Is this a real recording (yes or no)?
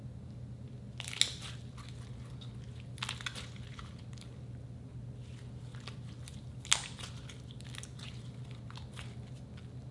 yes